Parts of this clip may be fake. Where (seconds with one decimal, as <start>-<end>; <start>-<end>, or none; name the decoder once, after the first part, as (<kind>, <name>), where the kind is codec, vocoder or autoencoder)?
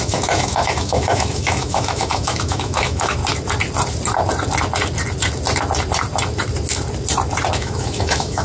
0.0-3.2 (autoencoder, DAC-VAE); 7.5-8.4